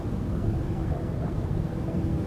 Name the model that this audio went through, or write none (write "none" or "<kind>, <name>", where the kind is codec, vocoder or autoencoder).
codec, SNAC